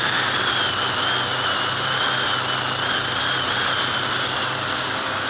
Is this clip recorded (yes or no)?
yes